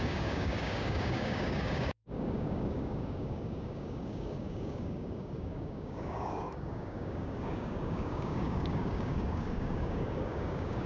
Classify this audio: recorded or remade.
remade